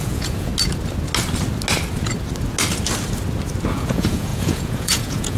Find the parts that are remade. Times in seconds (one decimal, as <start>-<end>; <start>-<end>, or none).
0.0-0.5; 3.7-5.4